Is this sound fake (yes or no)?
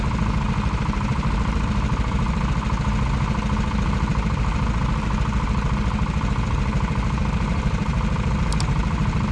no